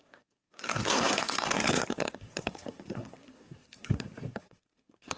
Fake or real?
fake